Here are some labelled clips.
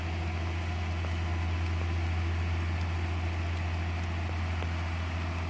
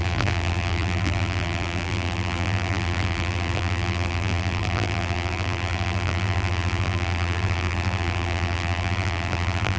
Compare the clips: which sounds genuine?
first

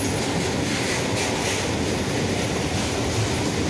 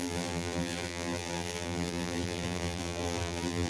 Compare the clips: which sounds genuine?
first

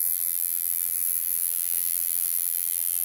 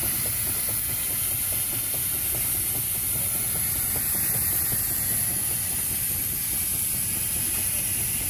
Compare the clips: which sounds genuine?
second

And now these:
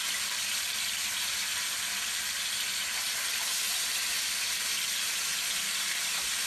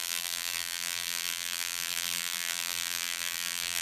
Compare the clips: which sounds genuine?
first